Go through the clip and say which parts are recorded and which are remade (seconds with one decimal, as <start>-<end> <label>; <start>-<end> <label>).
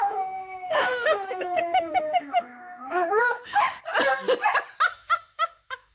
0.0-3.8 remade; 3.8-4.9 recorded; 4.9-5.9 remade